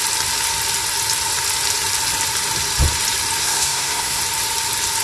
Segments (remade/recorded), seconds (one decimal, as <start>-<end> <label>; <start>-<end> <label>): 0.0-3.4 recorded; 3.4-4.2 remade; 4.2-5.0 recorded